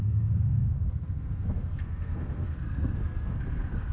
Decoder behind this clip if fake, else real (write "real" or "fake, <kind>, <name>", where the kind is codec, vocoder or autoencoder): fake, codec, SNAC